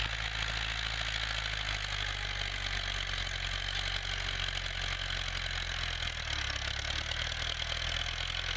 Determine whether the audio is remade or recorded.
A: recorded